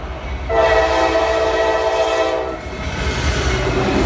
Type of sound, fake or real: real